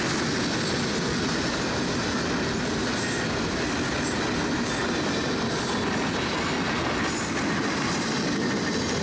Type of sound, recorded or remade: recorded